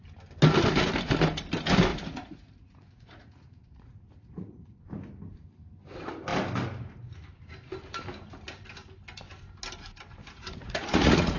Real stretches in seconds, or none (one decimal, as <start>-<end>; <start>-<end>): 0.0-1.9; 4.8-10.2

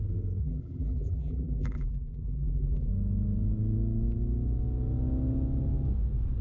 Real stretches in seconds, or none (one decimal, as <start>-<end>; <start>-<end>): 0.0-0.4; 2.9-6.4

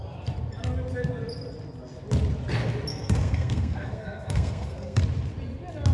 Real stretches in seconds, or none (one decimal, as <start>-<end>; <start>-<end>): 0.0-2.9; 5.0-5.9

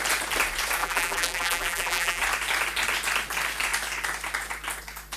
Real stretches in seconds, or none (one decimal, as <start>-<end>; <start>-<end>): 0.0-0.8; 2.2-5.2

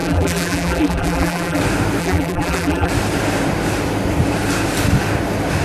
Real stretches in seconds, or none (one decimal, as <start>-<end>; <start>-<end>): 1.6-2.0; 2.9-5.6

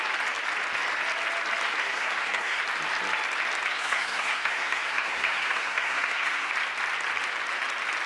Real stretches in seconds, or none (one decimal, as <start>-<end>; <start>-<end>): 0.0-1.8; 2.6-3.7; 6.5-8.1